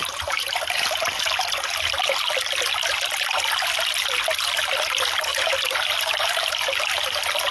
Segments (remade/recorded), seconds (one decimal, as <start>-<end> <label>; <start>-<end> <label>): 0.0-0.9 remade; 0.9-5.3 recorded; 5.3-6.6 remade; 6.6-7.5 recorded